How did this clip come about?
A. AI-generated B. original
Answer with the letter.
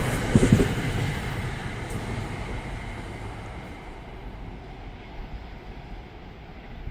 B